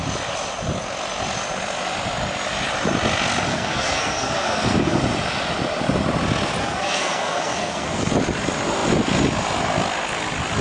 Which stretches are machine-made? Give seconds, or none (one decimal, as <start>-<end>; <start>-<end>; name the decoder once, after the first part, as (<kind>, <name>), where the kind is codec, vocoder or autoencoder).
3.5-5.0 (codec, SNAC); 6.6-8.1

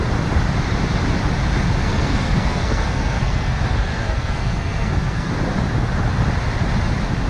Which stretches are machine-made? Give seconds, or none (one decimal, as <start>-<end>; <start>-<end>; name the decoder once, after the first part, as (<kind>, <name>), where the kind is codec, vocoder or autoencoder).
1.8-5.3 (codec, SNAC)

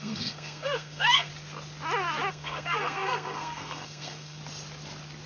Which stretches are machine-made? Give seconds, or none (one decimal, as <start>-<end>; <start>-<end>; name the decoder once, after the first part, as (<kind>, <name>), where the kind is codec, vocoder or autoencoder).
0.0-1.3 (codec, SNAC); 2.3-4.4